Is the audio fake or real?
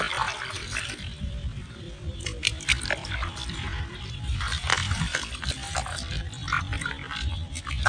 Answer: fake